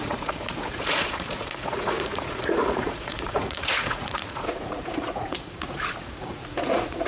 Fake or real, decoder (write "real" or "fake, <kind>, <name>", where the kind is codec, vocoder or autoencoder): fake, vocoder, Vocos